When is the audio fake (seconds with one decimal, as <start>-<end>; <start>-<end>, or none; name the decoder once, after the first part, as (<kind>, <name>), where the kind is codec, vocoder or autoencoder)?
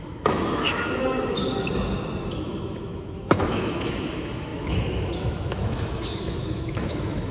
0.0-1.4 (autoencoder, DAC-VAE); 2.2-7.3